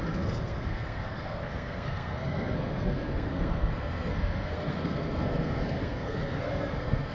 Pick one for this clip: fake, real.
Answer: fake